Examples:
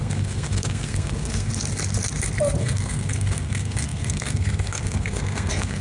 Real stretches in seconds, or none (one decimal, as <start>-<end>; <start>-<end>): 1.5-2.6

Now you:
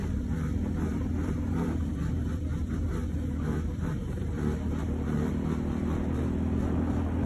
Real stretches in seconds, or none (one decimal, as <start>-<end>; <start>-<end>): 0.0-0.9; 5.3-7.3

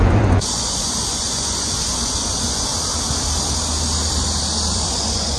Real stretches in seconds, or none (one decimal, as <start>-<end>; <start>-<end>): 2.7-4.7